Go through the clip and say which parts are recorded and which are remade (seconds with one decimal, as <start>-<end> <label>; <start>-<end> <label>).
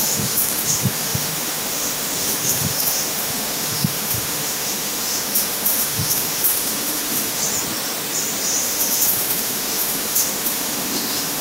0.0-7.4 remade; 7.4-8.6 recorded; 8.6-11.4 remade